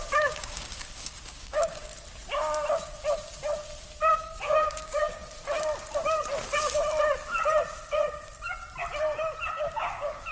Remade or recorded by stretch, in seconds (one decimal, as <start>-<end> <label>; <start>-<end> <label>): 0.0-1.9 remade; 1.9-4.1 recorded; 4.1-5.2 remade; 5.2-9.5 recorded; 9.5-10.3 remade